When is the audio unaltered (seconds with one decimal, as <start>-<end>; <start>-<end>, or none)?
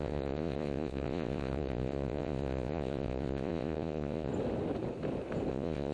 4.3-5.5